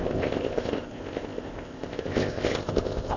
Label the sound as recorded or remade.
remade